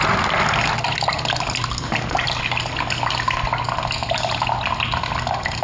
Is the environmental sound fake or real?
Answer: real